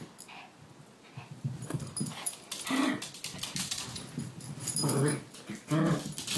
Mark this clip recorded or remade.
recorded